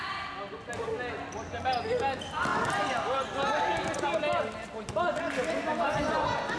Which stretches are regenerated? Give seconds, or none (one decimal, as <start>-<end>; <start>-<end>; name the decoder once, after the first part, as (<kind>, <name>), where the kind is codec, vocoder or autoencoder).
none